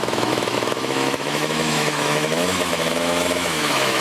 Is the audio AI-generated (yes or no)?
yes